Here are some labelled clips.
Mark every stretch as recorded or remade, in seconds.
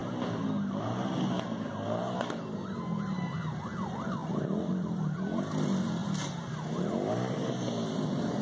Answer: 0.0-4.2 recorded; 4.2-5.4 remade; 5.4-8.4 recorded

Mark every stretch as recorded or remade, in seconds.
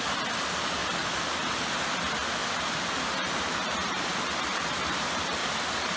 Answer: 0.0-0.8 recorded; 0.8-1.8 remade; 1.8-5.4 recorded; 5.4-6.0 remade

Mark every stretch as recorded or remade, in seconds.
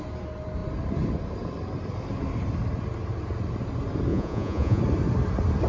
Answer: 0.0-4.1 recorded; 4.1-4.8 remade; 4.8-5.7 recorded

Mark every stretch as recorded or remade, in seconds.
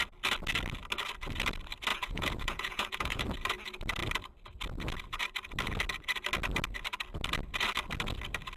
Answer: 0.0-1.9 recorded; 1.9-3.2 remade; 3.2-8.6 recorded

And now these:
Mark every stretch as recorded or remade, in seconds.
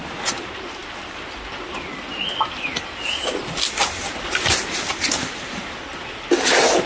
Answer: 0.0-6.9 recorded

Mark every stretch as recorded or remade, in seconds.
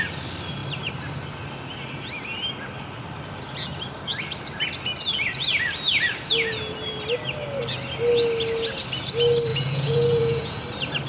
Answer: 0.0-9.5 recorded; 9.5-10.6 remade; 10.6-11.1 recorded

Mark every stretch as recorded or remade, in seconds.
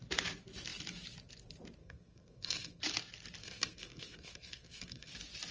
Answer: 0.0-1.8 recorded; 1.8-2.8 remade; 2.8-3.4 recorded; 3.4-5.1 remade; 5.1-5.5 recorded